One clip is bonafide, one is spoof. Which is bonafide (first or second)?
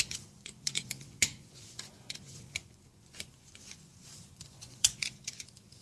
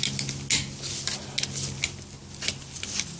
second